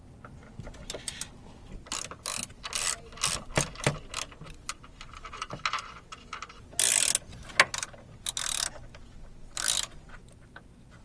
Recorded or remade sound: recorded